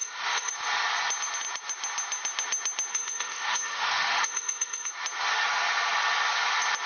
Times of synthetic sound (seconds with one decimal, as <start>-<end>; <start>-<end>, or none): 0.0-0.5; 2.9-4.9